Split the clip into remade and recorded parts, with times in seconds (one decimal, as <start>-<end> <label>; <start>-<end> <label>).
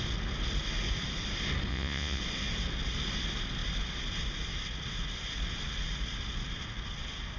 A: 0.0-1.7 recorded; 1.7-2.2 remade; 2.2-7.4 recorded